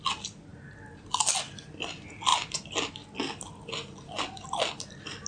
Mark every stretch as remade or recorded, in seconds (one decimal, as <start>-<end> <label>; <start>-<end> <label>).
0.0-5.3 recorded